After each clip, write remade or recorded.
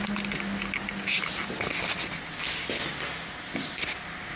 recorded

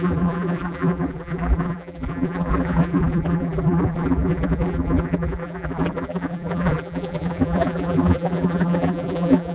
remade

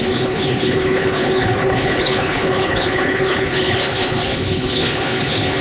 remade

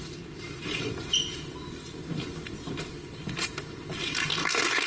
recorded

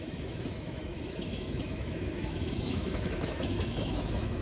remade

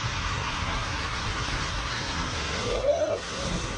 remade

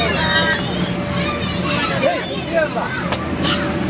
recorded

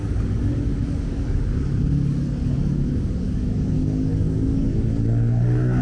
remade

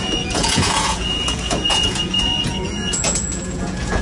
remade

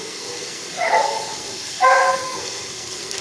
remade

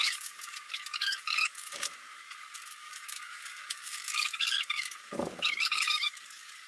remade